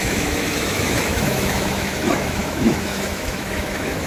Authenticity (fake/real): fake